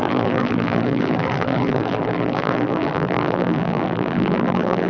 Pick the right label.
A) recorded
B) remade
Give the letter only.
B